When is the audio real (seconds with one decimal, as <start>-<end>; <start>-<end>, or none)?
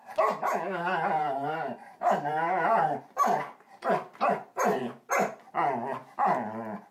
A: 0.0-1.2; 4.8-6.9